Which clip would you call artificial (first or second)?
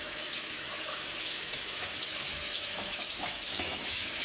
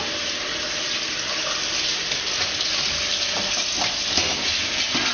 first